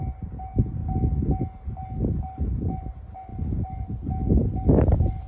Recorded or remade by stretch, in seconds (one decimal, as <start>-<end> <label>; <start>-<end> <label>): 0.0-5.3 recorded